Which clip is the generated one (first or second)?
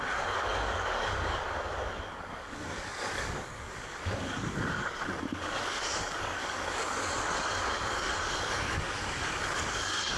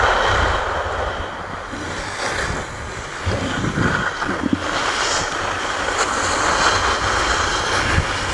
first